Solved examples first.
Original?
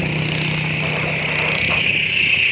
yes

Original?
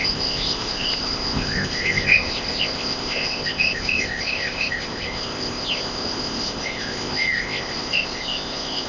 no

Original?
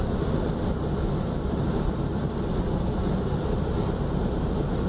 yes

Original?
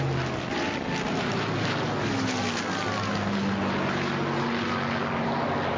yes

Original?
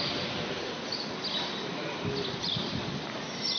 yes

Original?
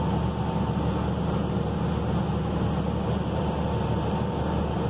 yes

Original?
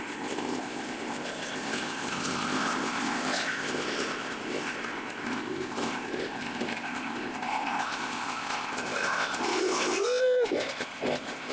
no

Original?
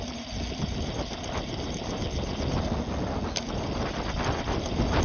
yes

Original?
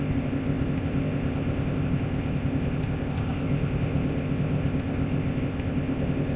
no